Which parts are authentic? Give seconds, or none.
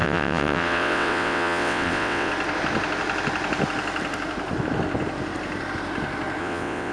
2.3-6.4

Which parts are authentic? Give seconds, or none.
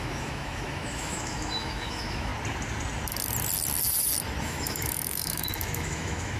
2.3-4.4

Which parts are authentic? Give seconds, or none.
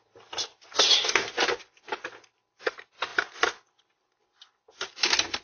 0.0-5.4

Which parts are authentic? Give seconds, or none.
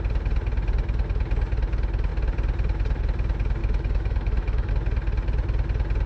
0.0-3.6; 4.7-6.1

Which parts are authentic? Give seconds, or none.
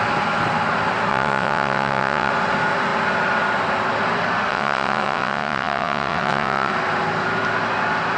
0.0-1.1; 2.3-4.5; 6.7-8.2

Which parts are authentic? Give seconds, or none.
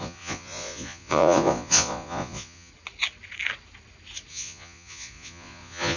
2.7-4.3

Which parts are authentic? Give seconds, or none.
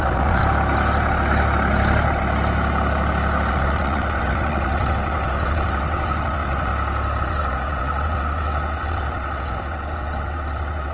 0.4-3.5; 6.7-7.2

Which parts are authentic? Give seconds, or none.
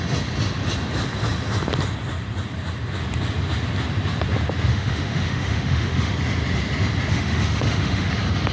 0.0-4.7; 6.1-7.1; 8.1-8.5